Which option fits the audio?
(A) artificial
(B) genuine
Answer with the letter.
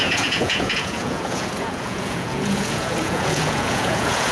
A